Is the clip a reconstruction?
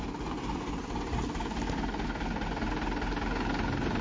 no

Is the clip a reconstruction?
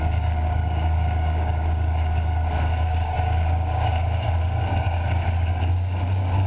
yes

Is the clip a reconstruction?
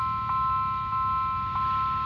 no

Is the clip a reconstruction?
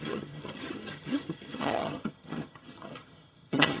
yes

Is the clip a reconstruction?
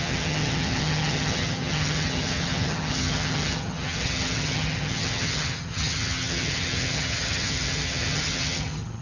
yes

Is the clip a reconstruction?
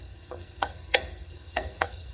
yes